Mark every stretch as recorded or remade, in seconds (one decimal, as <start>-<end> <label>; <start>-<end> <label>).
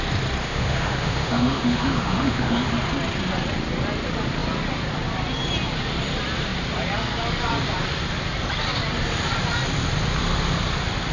0.0-0.4 recorded; 0.4-2.7 remade; 2.7-11.1 recorded